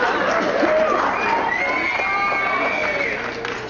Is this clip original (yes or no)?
yes